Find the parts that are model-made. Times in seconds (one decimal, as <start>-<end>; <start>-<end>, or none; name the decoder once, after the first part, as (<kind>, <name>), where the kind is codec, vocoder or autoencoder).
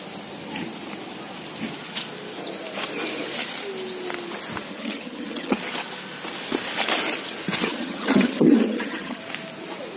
4.7-5.6 (vocoder, HiFi-GAN); 7.6-9.2